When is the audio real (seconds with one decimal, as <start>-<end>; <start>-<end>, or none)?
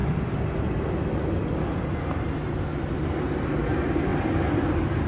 0.0-5.1